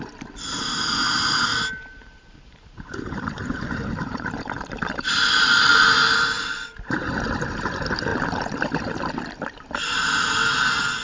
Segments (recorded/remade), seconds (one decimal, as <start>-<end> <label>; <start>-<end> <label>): 0.0-1.5 recorded; 1.5-5.8 remade; 5.8-11.0 recorded